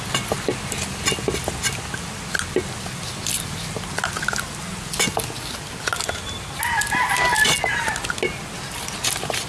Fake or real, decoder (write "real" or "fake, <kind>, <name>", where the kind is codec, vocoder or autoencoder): real